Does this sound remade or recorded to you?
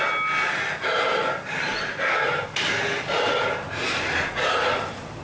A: recorded